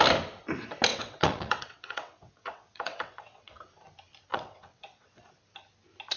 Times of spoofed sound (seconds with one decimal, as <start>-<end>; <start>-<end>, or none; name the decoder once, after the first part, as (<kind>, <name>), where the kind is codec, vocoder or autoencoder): 0.9-3.6 (vocoder, WaveNeXt); 4.3-5.2